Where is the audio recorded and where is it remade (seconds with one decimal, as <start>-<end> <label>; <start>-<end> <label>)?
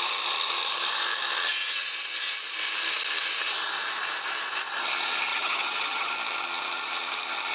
0.0-5.3 recorded; 5.3-6.1 remade; 6.1-7.5 recorded